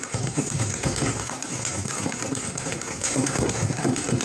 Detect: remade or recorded remade